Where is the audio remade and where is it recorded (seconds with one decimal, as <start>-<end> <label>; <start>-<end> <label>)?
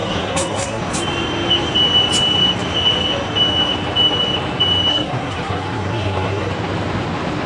0.0-0.8 remade; 0.8-4.9 recorded; 4.9-6.5 remade; 6.5-7.5 recorded